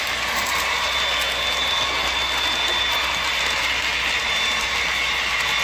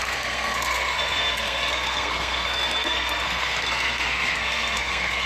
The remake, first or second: second